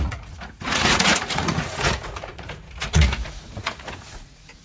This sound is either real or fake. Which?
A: fake